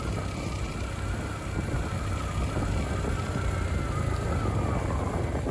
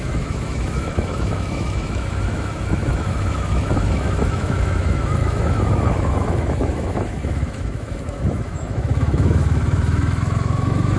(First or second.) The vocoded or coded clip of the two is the second